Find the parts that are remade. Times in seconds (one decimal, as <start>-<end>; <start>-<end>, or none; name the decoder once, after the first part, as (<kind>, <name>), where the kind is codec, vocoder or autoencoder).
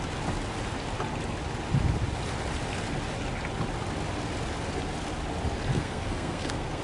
5.7-6.8 (codec, SNAC)